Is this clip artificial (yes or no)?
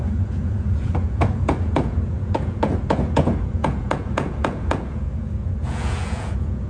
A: yes